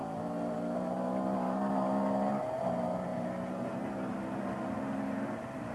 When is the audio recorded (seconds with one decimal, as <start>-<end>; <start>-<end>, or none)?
0.0-5.7